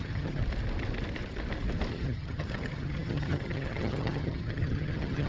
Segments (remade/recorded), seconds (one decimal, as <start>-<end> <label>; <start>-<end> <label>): 0.0-0.4 remade; 0.4-1.9 recorded; 1.9-5.3 remade